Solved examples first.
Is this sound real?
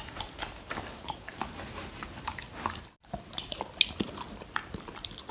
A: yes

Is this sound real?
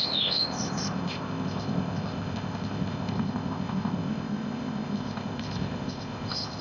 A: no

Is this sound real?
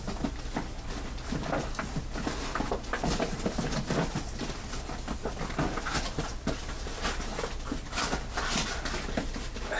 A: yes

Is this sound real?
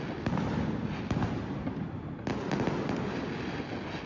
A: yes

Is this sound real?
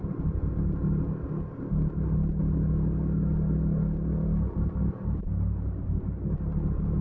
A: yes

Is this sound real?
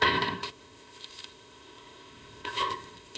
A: no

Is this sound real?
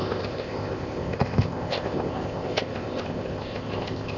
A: no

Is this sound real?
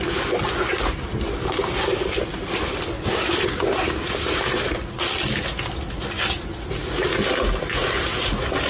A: yes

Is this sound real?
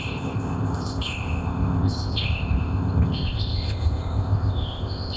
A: no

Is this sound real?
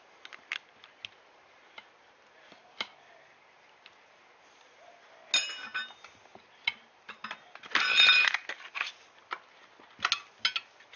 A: yes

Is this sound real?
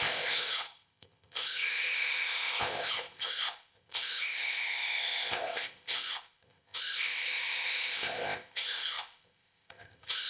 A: no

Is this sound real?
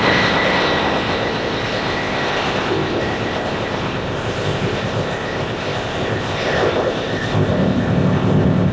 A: no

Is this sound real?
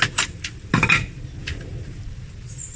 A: yes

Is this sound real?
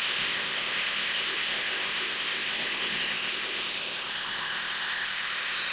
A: no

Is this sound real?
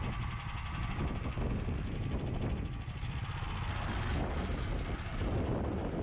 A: yes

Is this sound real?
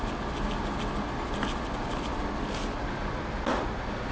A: yes